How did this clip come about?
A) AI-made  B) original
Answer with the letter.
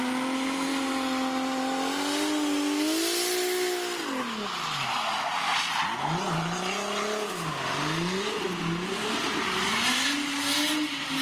B